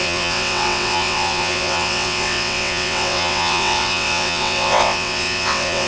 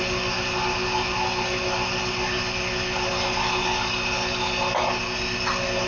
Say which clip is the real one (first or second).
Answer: second